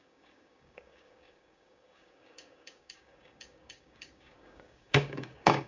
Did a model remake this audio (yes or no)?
yes